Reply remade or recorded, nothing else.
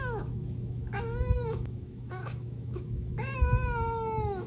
remade